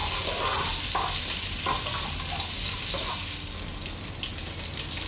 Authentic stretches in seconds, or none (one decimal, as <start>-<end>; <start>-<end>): 0.0-5.1